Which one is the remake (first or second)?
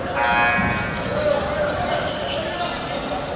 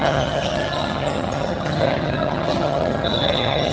second